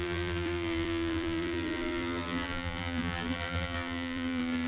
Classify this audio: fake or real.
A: fake